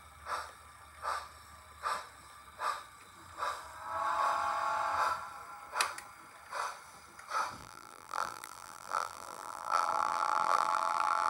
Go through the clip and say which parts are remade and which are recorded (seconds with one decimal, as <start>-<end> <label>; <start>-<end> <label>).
0.0-7.6 recorded; 7.6-11.3 remade

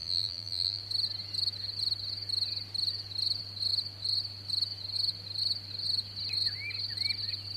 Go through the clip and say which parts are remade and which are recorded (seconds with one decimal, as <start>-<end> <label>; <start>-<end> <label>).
0.0-0.8 remade; 0.8-7.6 recorded

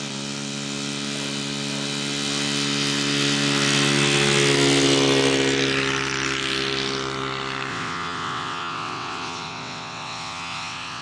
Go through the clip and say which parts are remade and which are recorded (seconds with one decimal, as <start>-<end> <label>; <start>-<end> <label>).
0.0-7.7 recorded; 7.7-11.0 remade

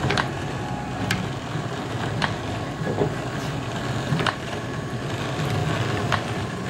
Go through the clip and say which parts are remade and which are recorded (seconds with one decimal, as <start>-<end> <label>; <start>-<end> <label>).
0.0-5.6 remade; 5.6-6.3 recorded; 6.3-6.7 remade

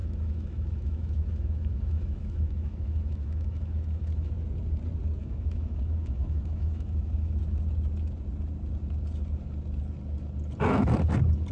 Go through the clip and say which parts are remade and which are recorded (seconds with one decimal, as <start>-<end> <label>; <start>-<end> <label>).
0.0-4.3 remade; 4.3-5.2 recorded; 5.2-7.4 remade; 7.4-11.5 recorded

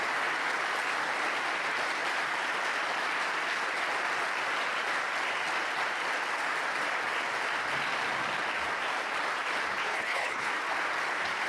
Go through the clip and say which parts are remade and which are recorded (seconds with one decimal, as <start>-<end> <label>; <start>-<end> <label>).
0.0-9.8 recorded; 9.8-10.5 remade; 10.5-11.5 recorded